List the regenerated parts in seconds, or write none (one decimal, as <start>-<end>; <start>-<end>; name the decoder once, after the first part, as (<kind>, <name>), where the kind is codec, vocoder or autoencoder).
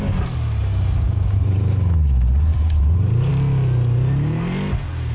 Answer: 0.6-1.7 (vocoder, BigVGAN v2); 2.5-3.3